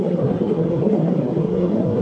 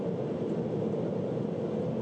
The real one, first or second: second